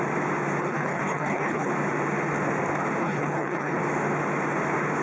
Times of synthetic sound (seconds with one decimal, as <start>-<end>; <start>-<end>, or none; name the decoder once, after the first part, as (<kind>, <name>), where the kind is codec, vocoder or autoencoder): 0.6-1.7 (codec, HILCodec); 3.0-3.8